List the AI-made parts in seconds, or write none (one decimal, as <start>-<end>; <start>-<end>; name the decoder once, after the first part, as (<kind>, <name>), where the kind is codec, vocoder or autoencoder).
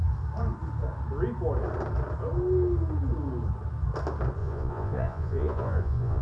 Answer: 4.4-6.2 (vocoder, Vocos)